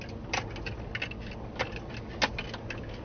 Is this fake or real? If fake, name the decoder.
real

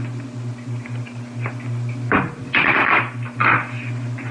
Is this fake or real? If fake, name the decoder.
real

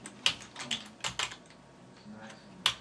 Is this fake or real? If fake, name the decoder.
real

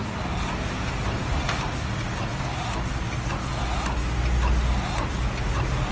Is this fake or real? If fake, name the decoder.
real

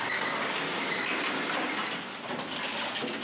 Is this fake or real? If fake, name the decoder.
real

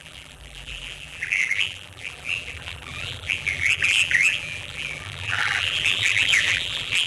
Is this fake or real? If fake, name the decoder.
fake, vocoder, BigVGAN v2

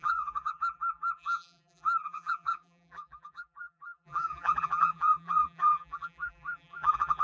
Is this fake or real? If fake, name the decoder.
fake, vocoder, BigVGAN v2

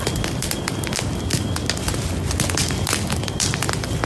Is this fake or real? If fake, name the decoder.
real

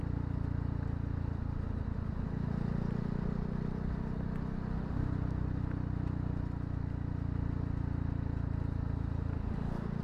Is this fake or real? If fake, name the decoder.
real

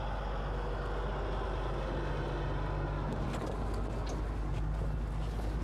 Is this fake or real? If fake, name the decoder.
real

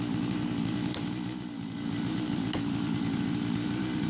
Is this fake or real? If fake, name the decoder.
fake, vocoder, BigVGAN v2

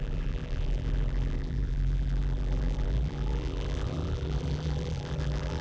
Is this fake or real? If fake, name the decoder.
fake, vocoder, BigVGAN v2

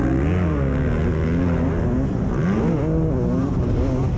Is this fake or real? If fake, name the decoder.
real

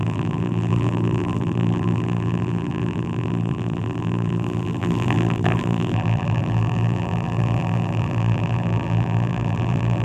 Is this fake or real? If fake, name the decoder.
fake, vocoder, BigVGAN v2